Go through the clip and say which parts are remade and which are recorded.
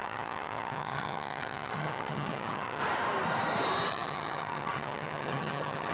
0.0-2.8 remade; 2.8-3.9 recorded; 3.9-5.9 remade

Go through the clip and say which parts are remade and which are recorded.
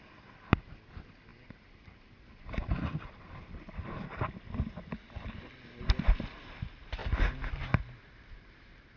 0.0-1.3 recorded; 1.3-4.2 remade; 4.2-7.0 recorded; 7.0-7.6 remade; 7.6-9.0 recorded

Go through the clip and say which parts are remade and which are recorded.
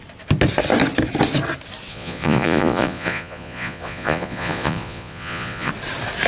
0.0-1.9 recorded; 1.9-5.7 remade; 5.7-6.3 recorded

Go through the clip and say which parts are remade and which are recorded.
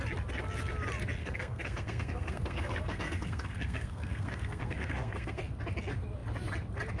0.0-1.2 recorded; 1.2-5.4 remade; 5.4-7.0 recorded